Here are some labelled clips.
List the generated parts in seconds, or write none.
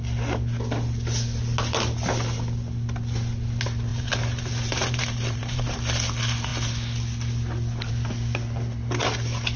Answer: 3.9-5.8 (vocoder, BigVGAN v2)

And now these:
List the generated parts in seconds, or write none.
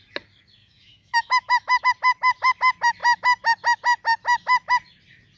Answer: 0.6-1.8 (autoencoder, DAC-VAE)